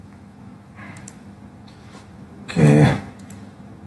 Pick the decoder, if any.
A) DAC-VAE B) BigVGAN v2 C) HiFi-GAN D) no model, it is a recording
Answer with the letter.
A